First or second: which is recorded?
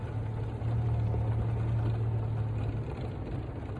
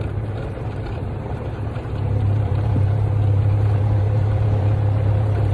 first